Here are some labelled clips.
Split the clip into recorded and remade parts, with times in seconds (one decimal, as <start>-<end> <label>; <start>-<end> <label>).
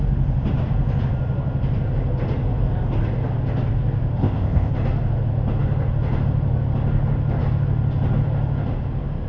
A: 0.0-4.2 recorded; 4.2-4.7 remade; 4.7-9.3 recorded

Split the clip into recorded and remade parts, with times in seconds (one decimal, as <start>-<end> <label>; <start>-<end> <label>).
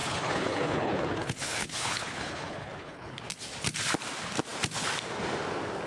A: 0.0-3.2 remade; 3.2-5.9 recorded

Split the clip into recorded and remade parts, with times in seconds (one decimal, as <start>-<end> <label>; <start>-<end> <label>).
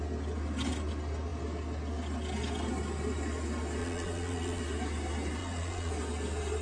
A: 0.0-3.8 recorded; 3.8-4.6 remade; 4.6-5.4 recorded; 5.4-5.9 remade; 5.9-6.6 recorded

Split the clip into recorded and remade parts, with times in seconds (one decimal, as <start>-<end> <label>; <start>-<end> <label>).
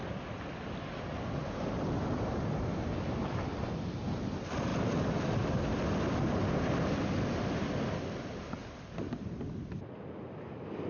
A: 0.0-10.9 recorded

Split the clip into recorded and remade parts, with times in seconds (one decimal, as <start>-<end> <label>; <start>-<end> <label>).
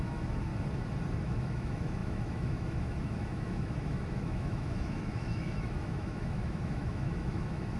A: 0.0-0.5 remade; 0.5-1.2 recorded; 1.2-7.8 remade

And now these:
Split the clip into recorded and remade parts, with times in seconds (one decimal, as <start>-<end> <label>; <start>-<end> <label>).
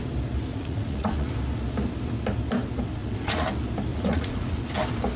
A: 0.0-0.5 recorded; 0.5-1.3 remade; 1.3-3.0 recorded; 3.0-3.5 remade; 3.5-3.9 recorded; 3.9-4.6 remade; 4.6-5.2 recorded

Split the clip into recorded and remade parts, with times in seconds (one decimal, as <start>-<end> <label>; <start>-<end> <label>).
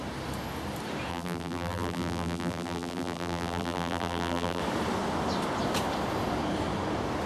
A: 0.0-1.1 recorded; 1.1-4.6 remade; 4.6-7.3 recorded